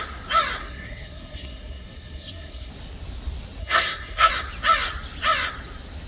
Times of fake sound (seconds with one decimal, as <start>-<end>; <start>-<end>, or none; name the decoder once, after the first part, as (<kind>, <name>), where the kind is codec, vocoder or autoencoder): 0.6-2.7 (codec, SNAC); 3.6-4.3